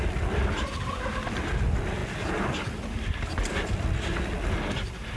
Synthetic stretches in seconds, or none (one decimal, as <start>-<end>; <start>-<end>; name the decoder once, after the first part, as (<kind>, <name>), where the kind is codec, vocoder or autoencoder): none